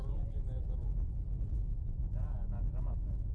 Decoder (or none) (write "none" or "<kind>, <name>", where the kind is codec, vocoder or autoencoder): none